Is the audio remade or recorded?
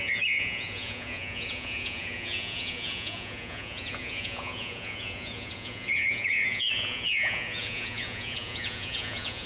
remade